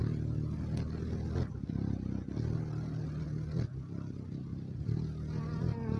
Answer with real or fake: real